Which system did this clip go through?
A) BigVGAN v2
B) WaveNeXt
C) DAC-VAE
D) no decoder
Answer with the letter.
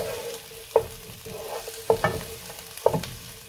D